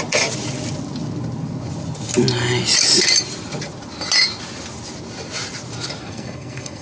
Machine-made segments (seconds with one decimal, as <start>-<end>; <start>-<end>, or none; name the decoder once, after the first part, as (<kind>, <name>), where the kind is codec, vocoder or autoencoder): 6.0-6.8 (codec, SNAC)